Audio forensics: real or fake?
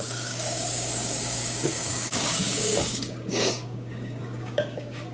fake